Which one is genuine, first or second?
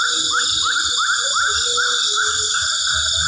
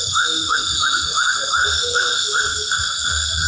first